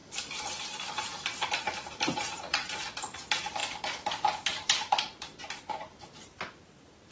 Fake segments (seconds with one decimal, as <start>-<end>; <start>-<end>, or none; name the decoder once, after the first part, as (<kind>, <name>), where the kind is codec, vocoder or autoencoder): 0.7-3.6 (vocoder, BigVGAN v2); 4.1-7.1